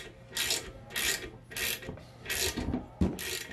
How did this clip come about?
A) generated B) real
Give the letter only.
B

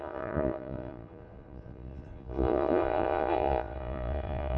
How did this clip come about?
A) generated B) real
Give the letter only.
A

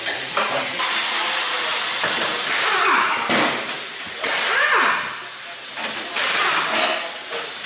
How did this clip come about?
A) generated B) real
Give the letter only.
B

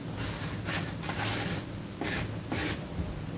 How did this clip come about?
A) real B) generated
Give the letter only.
A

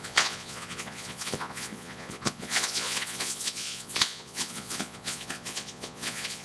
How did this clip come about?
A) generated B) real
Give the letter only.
A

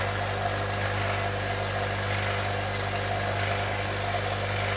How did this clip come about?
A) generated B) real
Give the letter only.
B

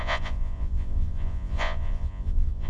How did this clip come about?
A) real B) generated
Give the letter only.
B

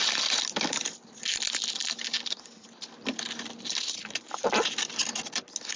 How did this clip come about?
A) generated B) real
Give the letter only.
B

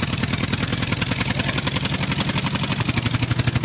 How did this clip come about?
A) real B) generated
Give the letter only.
A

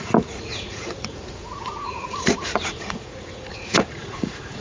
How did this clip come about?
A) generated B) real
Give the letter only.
A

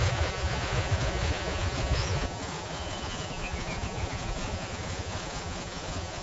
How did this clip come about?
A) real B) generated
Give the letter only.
B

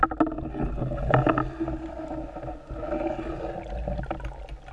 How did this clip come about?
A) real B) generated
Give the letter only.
A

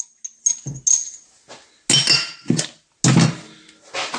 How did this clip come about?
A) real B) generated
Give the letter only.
A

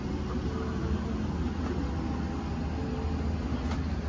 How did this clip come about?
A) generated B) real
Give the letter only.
B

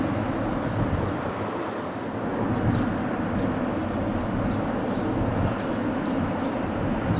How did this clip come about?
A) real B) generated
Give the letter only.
A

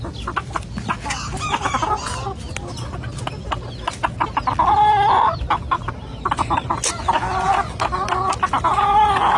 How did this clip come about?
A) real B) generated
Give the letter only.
A